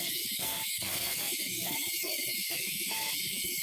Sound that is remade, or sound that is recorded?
remade